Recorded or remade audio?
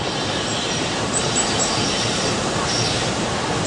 remade